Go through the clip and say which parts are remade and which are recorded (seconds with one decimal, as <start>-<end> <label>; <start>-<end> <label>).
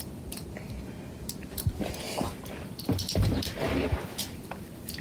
0.0-0.4 remade; 0.4-1.1 recorded; 1.1-3.7 remade; 3.7-4.2 recorded; 4.2-5.0 remade